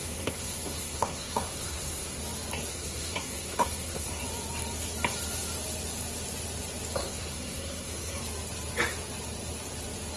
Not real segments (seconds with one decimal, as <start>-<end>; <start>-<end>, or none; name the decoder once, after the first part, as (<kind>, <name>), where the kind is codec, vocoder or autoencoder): 0.0-2.2 (codec, SNAC); 2.7-4.2; 7.0-8.2